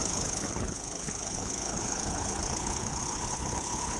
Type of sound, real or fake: fake